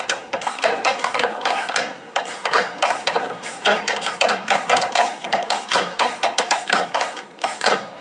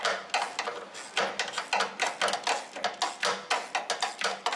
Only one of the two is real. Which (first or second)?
second